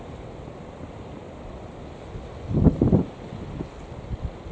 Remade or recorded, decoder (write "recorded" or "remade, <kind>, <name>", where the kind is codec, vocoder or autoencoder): recorded